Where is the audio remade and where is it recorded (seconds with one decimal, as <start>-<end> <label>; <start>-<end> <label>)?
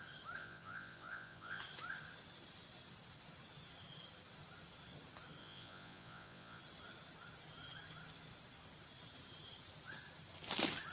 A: 0.0-0.4 recorded; 0.4-1.6 remade; 1.6-5.4 recorded; 5.4-6.6 remade; 6.6-10.9 recorded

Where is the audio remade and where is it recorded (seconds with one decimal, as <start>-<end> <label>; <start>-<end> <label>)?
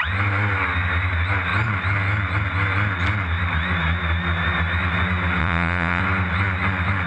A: 0.0-5.4 recorded; 5.4-6.0 remade; 6.0-7.1 recorded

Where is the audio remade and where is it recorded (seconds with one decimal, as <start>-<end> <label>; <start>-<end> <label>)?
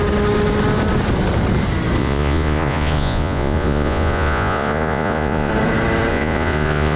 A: 0.0-2.0 recorded; 2.0-5.5 remade; 5.5-6.1 recorded; 6.1-7.0 remade